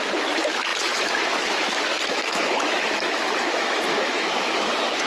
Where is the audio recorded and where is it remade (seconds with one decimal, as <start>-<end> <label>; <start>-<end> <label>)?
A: 0.0-5.1 remade